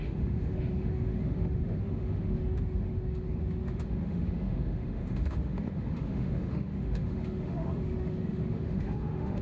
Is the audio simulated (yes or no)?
yes